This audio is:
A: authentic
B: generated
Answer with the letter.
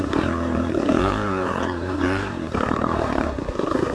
B